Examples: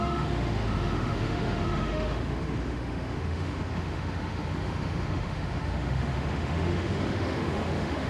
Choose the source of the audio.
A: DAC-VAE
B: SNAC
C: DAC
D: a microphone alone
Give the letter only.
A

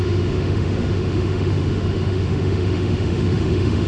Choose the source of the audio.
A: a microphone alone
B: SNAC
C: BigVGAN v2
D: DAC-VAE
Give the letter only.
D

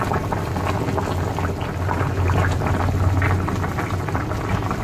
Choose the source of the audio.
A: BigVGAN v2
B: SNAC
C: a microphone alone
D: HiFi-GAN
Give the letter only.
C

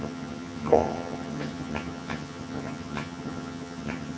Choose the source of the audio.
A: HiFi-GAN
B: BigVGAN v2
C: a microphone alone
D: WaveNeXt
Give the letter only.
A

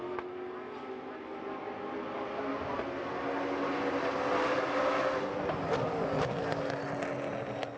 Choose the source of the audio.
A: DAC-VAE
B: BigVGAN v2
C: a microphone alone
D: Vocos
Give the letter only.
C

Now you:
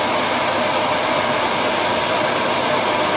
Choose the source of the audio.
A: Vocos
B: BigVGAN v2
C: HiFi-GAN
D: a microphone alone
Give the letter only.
D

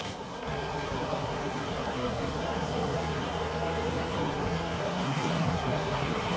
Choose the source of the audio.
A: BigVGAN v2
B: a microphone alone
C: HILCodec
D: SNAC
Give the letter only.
D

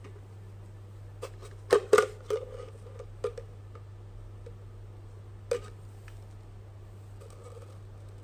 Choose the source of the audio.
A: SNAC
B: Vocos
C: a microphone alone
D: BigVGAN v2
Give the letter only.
C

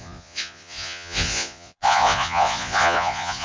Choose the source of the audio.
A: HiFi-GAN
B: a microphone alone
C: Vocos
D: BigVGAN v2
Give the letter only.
C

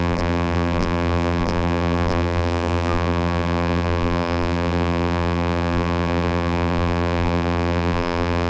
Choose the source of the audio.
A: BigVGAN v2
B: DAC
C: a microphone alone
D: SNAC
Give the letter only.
A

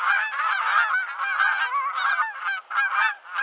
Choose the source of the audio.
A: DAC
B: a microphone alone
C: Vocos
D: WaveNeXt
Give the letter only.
B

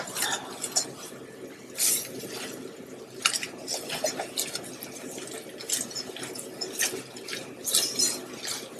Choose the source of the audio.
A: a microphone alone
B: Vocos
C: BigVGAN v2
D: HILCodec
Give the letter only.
A